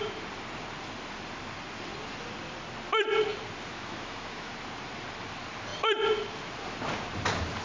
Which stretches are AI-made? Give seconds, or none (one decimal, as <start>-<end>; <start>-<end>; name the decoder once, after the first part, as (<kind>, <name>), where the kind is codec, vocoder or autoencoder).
3.7-4.5 (autoencoder, DAC-VAE)